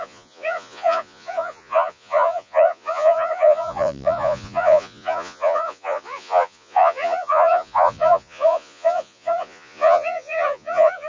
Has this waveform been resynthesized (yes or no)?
yes